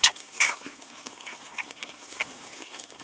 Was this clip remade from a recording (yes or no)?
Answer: yes